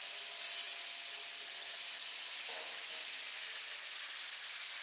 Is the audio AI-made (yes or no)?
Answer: no